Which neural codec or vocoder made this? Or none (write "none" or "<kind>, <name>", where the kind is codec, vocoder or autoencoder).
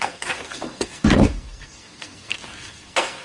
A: codec, SNAC